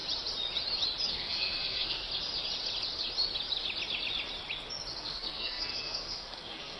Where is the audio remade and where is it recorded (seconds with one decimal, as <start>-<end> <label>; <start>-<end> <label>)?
0.0-1.1 recorded; 1.1-2.0 remade; 2.0-5.0 recorded; 5.0-6.8 remade